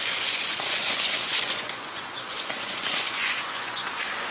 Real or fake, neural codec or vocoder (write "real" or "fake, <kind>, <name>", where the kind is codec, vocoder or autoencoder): fake, vocoder, Vocos